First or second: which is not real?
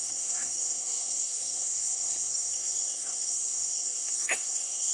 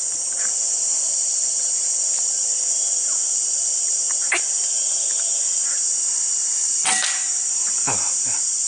first